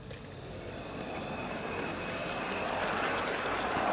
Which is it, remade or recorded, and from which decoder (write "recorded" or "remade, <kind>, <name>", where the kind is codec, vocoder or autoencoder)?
recorded